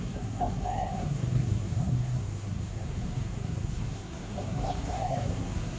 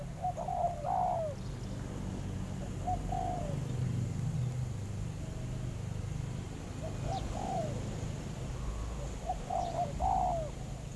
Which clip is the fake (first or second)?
first